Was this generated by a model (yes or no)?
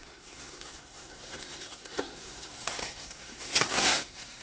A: yes